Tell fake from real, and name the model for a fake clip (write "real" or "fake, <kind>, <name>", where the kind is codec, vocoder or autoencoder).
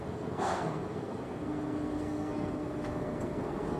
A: fake, codec, SNAC